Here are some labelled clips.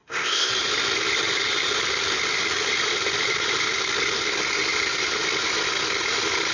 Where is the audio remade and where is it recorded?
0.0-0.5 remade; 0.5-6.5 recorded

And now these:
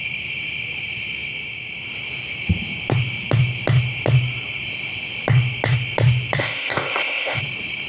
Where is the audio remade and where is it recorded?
0.0-6.4 recorded; 6.4-7.4 remade; 7.4-7.9 recorded

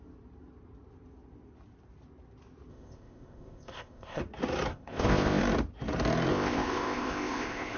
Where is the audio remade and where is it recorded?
0.0-2.7 recorded; 2.7-4.2 remade; 4.2-4.7 recorded; 4.7-5.4 remade; 5.4-6.3 recorded; 6.3-7.8 remade

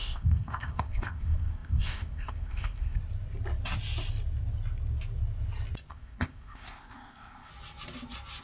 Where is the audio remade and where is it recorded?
0.0-3.0 remade; 3.0-5.9 recorded; 5.9-7.5 remade; 7.5-8.4 recorded

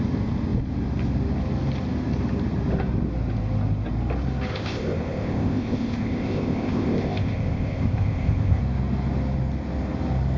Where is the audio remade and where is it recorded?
0.0-4.5 recorded; 4.5-8.6 remade; 8.6-10.4 recorded

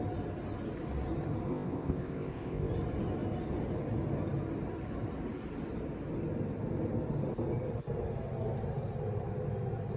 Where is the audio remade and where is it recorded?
0.0-1.5 recorded; 1.5-2.7 remade; 2.7-10.0 recorded